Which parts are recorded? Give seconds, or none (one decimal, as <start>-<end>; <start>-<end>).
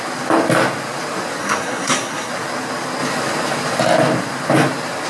0.0-1.4; 2.3-5.1